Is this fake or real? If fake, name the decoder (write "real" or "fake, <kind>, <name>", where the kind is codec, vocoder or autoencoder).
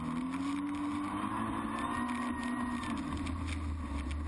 real